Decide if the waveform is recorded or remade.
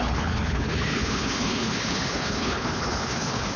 remade